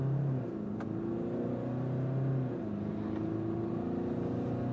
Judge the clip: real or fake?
real